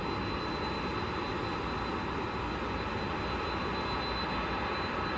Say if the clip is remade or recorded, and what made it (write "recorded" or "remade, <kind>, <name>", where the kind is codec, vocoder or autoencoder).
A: recorded